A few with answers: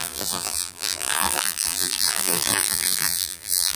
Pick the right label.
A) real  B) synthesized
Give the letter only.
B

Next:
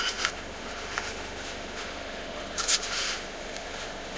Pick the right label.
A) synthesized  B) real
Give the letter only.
A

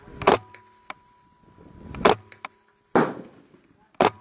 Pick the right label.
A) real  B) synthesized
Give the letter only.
A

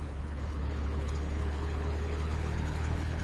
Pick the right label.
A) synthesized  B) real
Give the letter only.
A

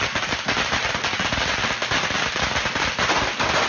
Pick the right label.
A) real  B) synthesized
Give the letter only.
A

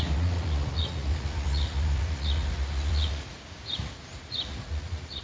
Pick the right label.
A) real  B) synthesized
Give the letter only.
B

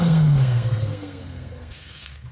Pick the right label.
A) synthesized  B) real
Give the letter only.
A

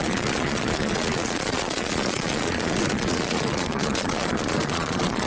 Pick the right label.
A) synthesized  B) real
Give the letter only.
A